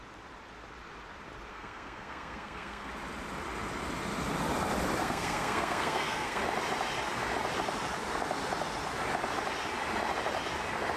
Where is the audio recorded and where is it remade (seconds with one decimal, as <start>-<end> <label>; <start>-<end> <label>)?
0.0-1.5 recorded; 1.5-2.9 remade; 2.9-5.0 recorded; 5.0-6.4 remade; 6.4-11.0 recorded